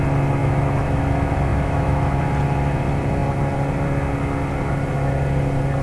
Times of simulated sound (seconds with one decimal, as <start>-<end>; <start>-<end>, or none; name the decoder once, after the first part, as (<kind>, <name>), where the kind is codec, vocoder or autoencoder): 0.4-1.0 (autoencoder, DAC-VAE); 1.5-2.2